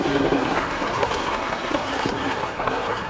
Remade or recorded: remade